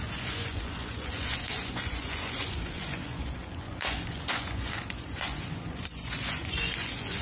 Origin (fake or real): fake